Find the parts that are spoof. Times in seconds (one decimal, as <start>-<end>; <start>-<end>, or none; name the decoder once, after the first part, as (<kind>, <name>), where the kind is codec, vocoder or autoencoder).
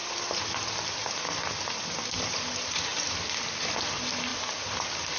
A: 0.0-0.5 (vocoder, BigVGAN v2)